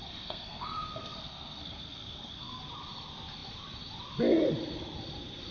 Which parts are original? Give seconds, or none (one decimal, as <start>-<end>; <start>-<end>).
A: 2.6-5.5